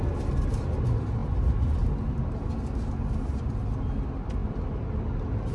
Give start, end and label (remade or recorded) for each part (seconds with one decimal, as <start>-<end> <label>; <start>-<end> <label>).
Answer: 0.0-5.5 recorded